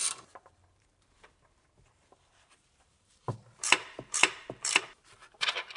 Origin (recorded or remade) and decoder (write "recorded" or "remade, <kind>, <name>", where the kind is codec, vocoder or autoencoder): remade, vocoder, BigVGAN v2